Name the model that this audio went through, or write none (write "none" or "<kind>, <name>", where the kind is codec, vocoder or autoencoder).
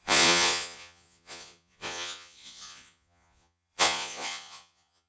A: vocoder, Vocos